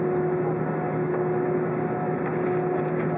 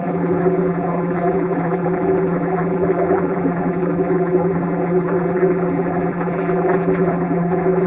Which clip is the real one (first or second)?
first